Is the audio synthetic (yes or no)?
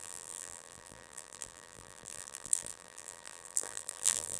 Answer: yes